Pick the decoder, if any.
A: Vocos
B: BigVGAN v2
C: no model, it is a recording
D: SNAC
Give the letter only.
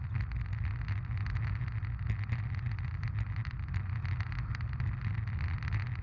C